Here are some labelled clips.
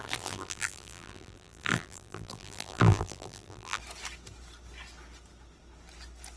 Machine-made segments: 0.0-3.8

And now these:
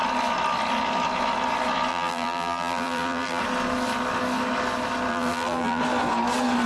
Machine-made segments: 1.9-3.4; 5.1-5.8

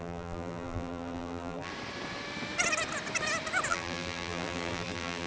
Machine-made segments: 0.0-1.7; 3.7-5.3

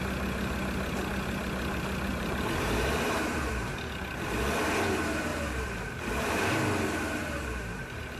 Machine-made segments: 2.1-3.5; 5.3-6.5; 7.2-8.2

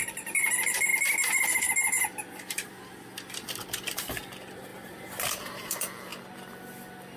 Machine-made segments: 0.9-4.1; 4.7-5.4